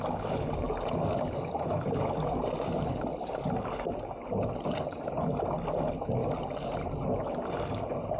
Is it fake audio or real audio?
real